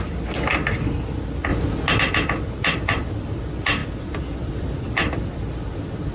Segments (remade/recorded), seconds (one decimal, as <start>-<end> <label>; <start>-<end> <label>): 0.0-3.8 recorded; 3.8-4.8 remade; 4.8-6.1 recorded